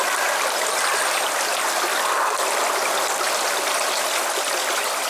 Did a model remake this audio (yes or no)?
no